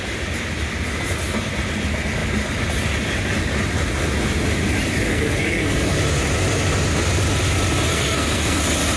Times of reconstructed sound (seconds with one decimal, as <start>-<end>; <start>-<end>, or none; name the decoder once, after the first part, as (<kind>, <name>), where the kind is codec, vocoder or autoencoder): 5.1-6.0 (codec, SNAC); 7.9-8.6